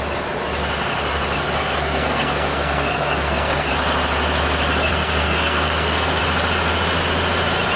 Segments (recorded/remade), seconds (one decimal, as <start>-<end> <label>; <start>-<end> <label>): 0.0-1.6 recorded; 1.6-3.7 remade; 3.7-4.9 recorded; 4.9-6.2 remade; 6.2-7.8 recorded